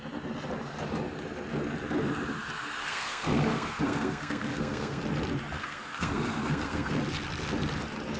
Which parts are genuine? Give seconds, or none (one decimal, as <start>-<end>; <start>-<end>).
0.0-2.8; 5.0-5.6; 7.0-8.2